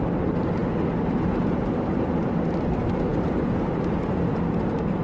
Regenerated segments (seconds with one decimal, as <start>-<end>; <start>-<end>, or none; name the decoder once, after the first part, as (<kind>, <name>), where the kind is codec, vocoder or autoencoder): none